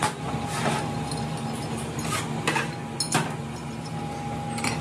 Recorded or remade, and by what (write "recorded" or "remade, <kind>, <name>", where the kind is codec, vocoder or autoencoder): recorded